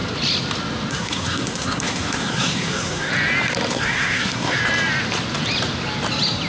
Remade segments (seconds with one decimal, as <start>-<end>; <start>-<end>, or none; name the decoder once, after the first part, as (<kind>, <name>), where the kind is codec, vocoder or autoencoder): 0.9-3.1 (codec, SNAC); 3.7-4.6